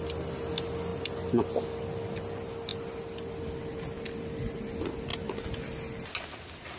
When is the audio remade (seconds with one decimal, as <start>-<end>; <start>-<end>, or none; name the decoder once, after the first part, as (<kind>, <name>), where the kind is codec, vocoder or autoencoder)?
none